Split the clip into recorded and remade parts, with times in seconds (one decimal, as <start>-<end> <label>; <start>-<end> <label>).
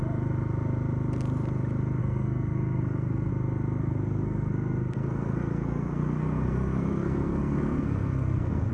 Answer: 0.0-2.0 recorded; 2.0-3.3 remade; 3.3-3.8 recorded; 3.8-8.7 remade